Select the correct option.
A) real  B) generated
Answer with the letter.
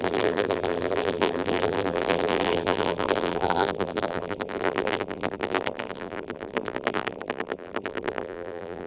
B